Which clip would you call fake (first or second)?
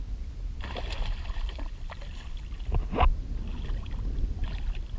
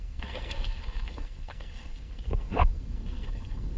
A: second